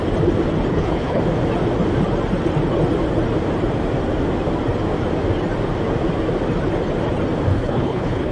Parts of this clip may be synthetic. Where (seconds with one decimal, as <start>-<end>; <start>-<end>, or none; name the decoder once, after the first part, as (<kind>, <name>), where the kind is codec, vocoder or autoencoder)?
0.7-1.2 (codec, HILCodec); 7.5-8.3